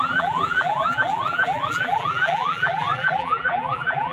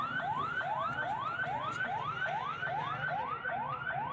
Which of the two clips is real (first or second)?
second